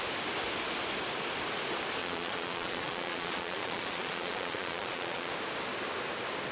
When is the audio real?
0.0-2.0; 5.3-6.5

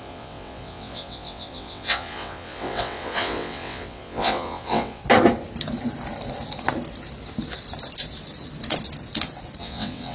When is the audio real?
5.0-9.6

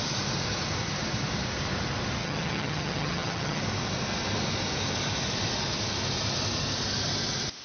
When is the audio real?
0.0-2.2; 3.6-7.6

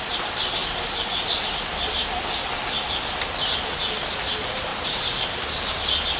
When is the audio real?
0.0-4.7; 5.7-6.2

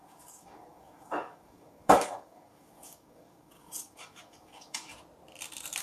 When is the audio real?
4.9-5.8